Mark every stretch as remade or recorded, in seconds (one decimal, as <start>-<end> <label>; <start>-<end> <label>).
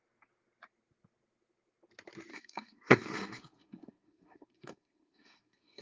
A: 0.0-2.3 recorded; 2.3-5.8 remade